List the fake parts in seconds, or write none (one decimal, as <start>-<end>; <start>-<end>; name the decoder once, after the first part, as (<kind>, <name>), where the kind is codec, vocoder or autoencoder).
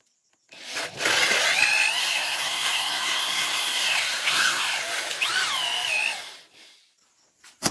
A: 2.0-4.8 (codec, SNAC)